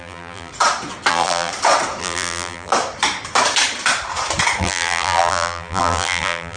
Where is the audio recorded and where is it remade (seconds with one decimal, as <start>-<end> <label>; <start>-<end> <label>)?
0.0-0.5 remade; 0.5-1.1 recorded; 1.1-1.5 remade; 1.5-2.0 recorded; 2.0-2.7 remade; 2.7-4.6 recorded; 4.6-6.6 remade